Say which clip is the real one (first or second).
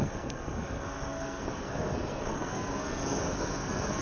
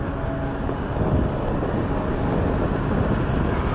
second